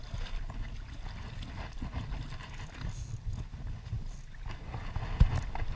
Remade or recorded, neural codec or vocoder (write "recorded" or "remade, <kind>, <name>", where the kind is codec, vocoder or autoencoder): recorded